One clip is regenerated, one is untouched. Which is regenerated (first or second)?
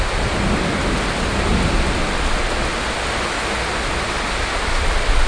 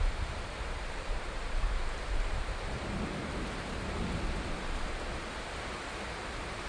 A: second